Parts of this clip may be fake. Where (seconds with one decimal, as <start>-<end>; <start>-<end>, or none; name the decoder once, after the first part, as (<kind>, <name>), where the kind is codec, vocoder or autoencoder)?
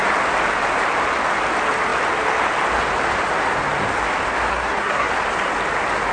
4.5-5.1 (codec, SNAC)